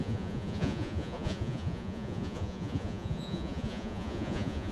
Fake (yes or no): yes